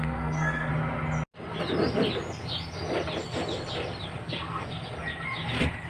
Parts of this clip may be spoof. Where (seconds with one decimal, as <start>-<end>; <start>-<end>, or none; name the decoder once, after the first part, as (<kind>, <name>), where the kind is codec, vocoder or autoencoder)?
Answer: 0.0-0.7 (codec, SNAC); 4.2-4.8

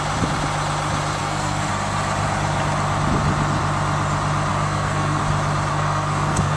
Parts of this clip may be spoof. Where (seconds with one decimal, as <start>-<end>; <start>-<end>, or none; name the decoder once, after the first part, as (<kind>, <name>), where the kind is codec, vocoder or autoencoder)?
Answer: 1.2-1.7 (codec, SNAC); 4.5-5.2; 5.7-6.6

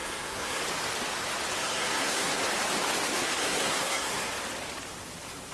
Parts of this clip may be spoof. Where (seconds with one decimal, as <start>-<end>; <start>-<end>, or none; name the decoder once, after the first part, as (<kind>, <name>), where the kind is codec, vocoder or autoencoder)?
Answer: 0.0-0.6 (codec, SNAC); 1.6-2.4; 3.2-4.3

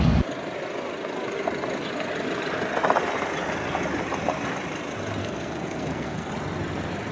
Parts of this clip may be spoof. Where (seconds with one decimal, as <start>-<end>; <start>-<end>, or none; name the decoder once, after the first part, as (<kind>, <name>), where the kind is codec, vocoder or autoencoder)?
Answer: 5.2-6.3 (codec, SNAC)

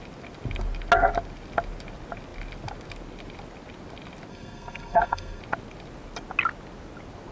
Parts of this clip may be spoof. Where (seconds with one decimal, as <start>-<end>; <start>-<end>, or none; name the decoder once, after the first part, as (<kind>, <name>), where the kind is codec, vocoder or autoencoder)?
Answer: 4.3-5.4 (codec, SNAC)

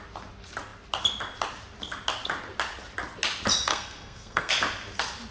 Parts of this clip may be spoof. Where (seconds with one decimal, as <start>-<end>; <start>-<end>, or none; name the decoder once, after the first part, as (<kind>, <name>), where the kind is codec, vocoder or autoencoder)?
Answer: 3.7-4.5 (codec, SNAC)

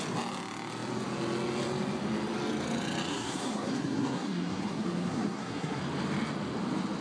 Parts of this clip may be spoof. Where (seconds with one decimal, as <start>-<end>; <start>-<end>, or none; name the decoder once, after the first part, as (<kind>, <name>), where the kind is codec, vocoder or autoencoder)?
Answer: 3.1-5.8 (codec, SNAC)

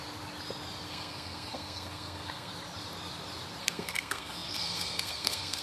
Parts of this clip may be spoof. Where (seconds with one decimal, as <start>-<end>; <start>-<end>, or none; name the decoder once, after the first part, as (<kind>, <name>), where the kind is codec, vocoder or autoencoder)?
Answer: 0.9-2.5 (codec, SNAC); 3.6-5.6